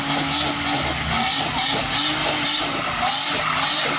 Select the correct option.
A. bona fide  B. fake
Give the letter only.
A